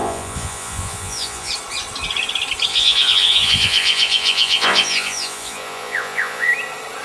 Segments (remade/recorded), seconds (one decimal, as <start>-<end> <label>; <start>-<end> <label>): 0.0-1.5 remade; 1.5-2.7 recorded; 2.7-6.5 remade; 6.5-7.0 recorded